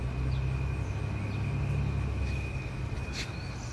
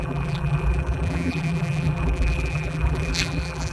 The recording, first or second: first